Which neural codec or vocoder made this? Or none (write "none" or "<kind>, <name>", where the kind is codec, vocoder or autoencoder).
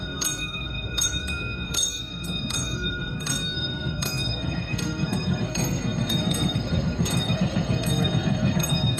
codec, SNAC